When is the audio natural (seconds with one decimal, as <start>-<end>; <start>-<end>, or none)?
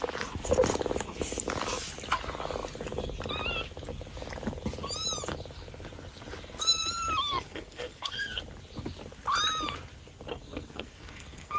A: 0.0-7.3; 8.4-10.3